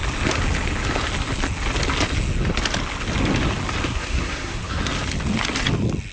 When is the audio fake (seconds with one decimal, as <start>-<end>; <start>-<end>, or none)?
3.9-4.8